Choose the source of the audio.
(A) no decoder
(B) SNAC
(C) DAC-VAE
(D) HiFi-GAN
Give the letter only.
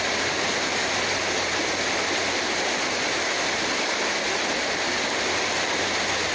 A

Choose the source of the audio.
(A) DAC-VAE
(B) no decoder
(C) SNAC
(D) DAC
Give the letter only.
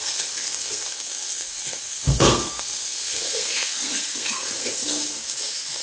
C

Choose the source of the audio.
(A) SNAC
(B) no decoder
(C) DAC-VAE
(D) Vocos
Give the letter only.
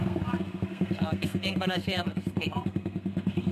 A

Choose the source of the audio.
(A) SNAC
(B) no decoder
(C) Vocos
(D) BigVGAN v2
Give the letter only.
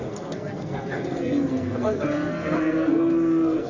A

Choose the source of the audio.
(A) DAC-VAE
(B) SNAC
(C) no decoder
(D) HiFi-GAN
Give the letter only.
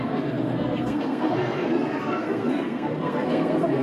B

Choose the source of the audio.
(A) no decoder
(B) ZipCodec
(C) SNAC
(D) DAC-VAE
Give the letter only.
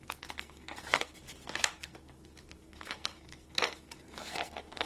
C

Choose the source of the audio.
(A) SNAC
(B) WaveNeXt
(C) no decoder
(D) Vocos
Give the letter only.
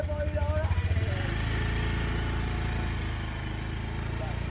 C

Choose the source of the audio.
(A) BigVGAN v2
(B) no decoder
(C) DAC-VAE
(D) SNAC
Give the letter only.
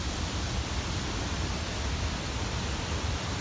B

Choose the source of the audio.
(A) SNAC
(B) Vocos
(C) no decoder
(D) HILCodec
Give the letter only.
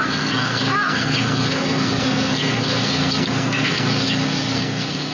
A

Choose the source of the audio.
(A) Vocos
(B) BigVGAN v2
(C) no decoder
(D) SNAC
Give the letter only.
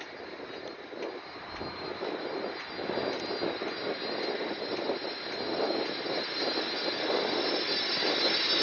C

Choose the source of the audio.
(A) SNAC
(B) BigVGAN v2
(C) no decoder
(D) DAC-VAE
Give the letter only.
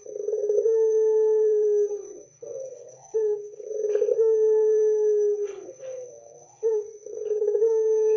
A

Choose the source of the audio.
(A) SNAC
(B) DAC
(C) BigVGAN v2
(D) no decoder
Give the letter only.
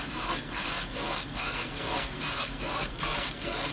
A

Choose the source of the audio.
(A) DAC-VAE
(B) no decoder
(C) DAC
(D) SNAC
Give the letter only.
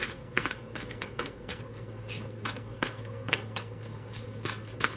D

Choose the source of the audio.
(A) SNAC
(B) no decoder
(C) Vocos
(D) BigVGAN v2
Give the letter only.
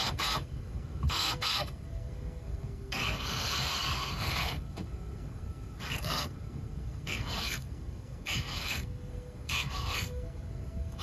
A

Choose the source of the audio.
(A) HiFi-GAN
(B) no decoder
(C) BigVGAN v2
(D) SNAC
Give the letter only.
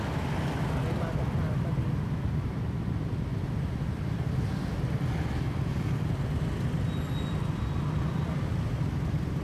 B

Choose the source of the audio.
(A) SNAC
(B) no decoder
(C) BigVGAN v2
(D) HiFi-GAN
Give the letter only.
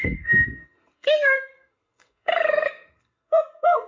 A